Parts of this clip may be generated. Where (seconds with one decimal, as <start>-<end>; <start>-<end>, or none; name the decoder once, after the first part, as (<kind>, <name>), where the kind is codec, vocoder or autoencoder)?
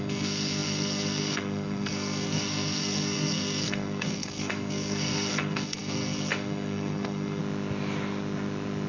0.0-7.4 (codec, SNAC)